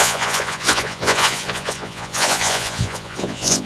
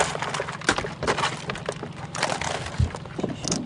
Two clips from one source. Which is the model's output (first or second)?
first